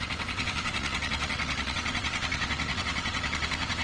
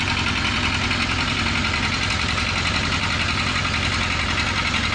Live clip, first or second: second